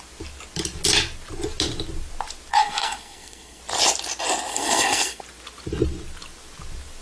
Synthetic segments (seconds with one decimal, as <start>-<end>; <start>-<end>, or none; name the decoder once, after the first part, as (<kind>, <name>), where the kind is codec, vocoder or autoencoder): 2.5-3.6 (codec, SNAC); 4.5-5.2